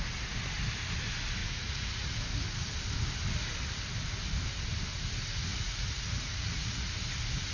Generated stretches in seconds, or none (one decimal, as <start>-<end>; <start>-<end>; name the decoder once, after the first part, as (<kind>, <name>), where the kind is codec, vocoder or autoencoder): 1.4-2.1 (vocoder, Vocos); 5.5-6.9